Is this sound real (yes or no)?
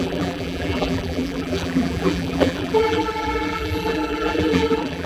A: no